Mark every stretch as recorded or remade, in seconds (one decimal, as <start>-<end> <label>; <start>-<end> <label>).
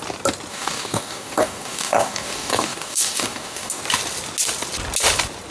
0.0-0.5 recorded; 0.5-3.8 remade; 3.8-5.5 recorded